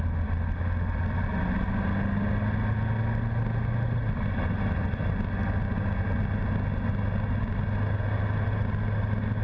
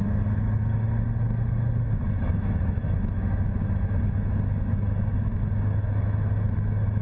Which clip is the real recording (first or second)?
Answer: first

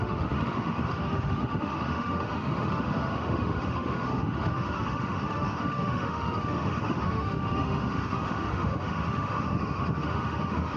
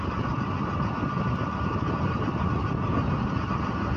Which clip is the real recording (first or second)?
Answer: second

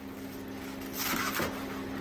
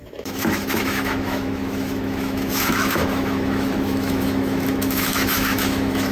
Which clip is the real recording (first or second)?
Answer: first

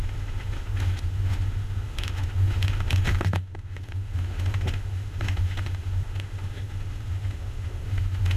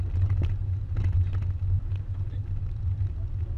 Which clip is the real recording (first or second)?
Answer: second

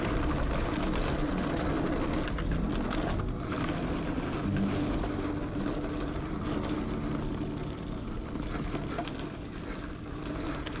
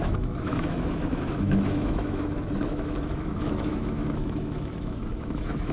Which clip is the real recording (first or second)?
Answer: first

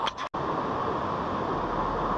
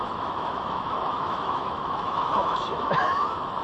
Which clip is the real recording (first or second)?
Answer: first